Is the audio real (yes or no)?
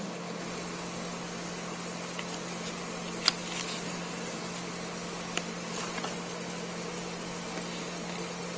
yes